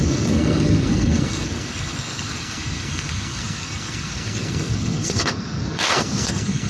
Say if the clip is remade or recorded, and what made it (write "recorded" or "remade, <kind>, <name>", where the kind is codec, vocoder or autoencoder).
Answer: remade, codec, SNAC